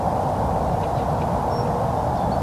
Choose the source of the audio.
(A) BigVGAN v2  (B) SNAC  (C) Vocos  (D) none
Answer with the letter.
D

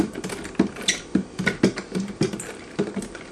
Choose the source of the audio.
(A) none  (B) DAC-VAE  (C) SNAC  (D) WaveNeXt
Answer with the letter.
A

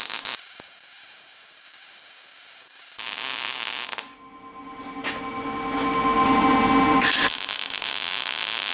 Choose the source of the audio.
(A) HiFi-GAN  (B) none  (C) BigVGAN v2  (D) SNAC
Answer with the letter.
B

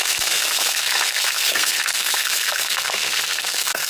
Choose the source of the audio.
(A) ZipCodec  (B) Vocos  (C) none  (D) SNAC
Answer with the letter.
D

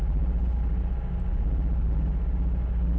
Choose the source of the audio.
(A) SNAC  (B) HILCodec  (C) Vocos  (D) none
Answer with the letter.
D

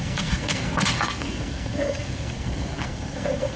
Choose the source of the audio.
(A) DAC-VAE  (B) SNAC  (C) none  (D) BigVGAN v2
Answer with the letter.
B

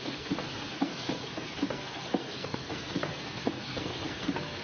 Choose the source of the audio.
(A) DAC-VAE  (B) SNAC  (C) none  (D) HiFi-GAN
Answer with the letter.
B